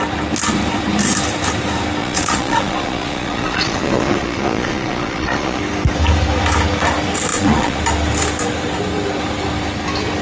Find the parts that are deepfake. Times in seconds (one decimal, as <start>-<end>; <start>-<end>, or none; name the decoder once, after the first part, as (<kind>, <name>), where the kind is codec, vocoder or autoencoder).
2.0-5.6 (vocoder, Vocos); 7.3-7.8